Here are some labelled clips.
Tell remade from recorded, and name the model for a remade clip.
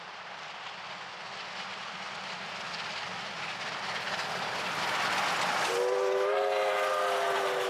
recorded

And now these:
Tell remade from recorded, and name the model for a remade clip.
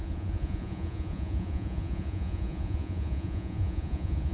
remade, vocoder, Vocos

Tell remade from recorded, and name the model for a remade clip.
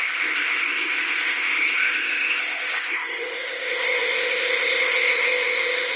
remade, codec, ZipCodec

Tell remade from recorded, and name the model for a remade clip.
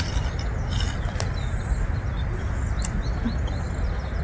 recorded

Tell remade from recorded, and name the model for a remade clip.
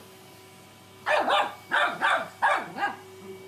recorded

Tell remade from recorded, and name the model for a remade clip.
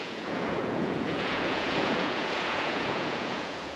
remade, vocoder, Vocos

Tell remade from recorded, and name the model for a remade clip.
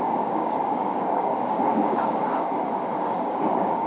remade, codec, DAC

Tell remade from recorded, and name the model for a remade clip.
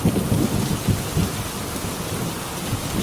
recorded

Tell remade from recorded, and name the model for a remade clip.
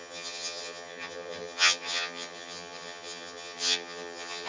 remade, vocoder, HiFi-GAN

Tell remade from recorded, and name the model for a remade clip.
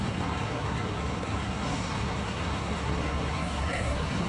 remade, codec, SNAC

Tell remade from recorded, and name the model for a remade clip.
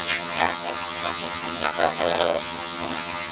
remade, vocoder, HiFi-GAN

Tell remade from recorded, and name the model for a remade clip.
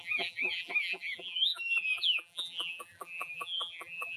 remade, vocoder, BigVGAN v2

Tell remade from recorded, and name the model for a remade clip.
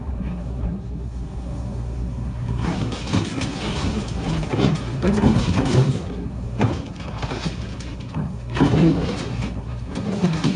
remade, codec, SNAC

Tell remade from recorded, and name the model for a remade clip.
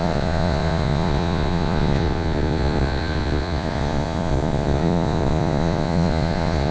remade, vocoder, Vocos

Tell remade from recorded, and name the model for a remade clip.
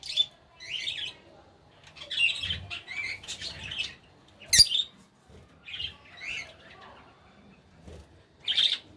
recorded